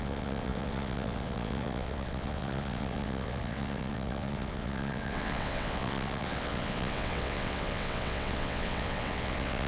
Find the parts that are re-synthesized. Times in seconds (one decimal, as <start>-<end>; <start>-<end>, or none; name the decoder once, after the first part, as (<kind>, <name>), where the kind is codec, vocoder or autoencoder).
0.0-9.7 (vocoder, WaveNeXt)